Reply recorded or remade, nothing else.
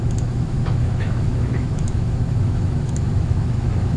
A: remade